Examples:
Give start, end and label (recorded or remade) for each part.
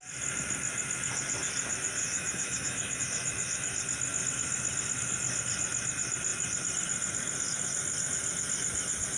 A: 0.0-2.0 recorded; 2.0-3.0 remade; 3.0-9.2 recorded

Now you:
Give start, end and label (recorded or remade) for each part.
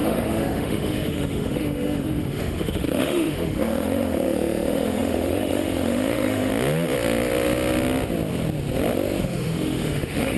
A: 0.0-6.5 remade; 6.5-9.2 recorded; 9.2-10.4 remade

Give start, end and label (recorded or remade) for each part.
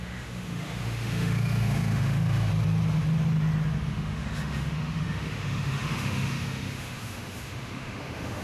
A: 0.0-2.5 remade; 2.5-3.9 recorded; 3.9-8.4 remade